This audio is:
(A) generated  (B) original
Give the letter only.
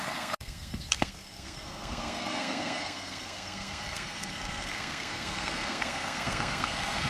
A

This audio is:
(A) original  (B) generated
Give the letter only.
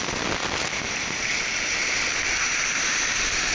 A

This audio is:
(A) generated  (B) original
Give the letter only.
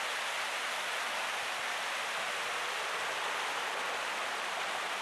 B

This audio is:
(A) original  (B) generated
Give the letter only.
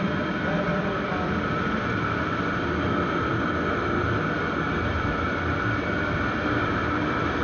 B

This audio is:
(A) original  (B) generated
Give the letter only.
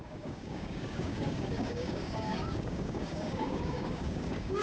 B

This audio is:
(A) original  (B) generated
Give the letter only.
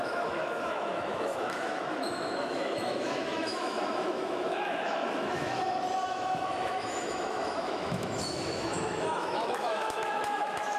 B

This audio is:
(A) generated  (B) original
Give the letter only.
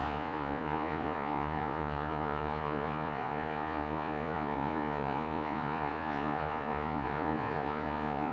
A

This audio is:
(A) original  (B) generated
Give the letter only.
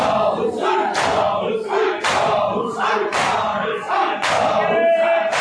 A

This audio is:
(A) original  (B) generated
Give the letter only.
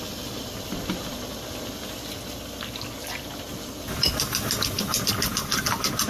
A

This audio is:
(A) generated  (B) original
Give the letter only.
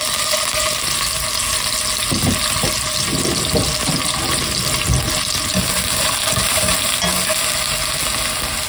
B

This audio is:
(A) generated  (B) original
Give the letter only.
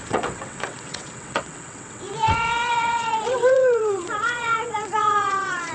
A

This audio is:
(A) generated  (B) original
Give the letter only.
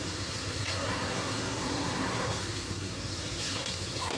A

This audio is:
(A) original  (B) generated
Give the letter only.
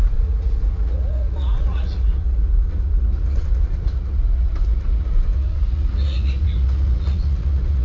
B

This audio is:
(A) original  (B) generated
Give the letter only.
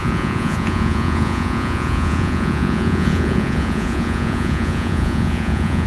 B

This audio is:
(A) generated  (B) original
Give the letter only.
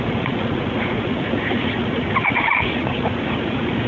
A